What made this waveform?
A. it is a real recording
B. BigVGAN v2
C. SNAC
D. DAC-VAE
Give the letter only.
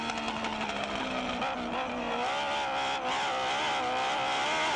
A